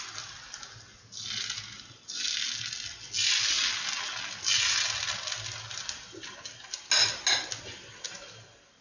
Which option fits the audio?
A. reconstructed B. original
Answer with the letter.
B